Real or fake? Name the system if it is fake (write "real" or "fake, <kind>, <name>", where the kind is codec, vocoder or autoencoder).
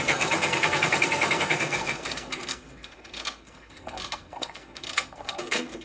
fake, codec, SNAC